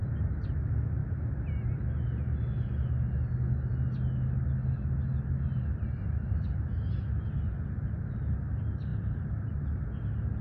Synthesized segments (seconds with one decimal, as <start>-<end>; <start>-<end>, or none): none